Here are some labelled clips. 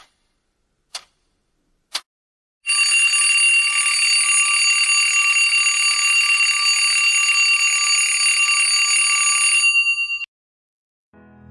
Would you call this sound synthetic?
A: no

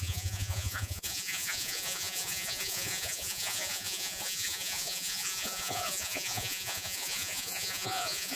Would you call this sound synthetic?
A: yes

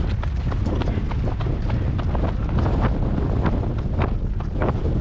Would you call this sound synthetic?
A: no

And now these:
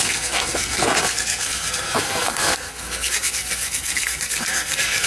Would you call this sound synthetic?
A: yes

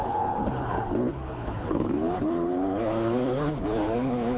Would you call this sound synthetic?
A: yes